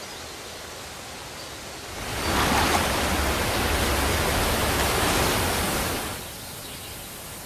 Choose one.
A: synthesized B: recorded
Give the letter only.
B